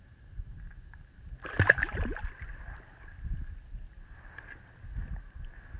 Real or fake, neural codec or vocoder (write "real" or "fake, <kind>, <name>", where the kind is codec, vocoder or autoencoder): real